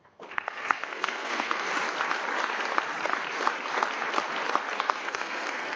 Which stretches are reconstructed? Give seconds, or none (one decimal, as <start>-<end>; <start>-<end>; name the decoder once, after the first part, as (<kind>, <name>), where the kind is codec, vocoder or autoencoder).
0.0-1.7 (codec, SNAC); 4.8-5.8